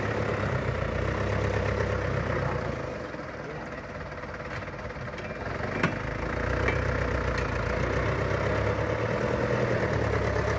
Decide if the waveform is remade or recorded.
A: recorded